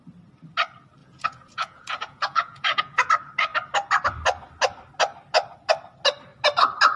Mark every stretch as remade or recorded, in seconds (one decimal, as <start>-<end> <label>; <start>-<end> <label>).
0.0-1.0 recorded; 1.0-3.1 remade; 3.1-7.0 recorded